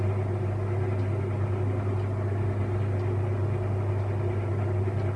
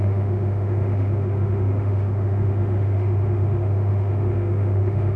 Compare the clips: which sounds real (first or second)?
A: first